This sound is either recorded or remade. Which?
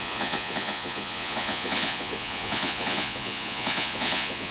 remade